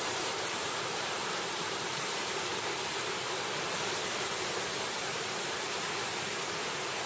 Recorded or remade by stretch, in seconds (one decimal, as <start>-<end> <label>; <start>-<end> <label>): 0.0-2.5 remade; 2.5-5.0 recorded; 5.0-7.1 remade